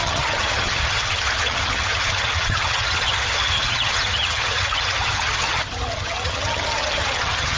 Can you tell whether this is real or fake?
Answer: fake